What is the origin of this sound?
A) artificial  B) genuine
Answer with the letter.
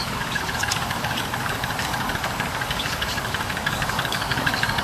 A